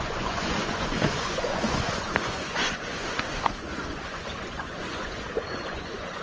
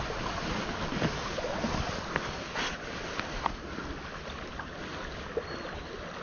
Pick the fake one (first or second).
first